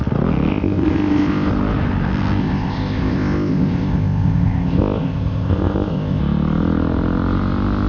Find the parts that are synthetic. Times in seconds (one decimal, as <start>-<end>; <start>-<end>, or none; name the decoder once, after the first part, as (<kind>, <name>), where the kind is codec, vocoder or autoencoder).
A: 0.5-1.5 (codec, ZipCodec); 2.4-6.2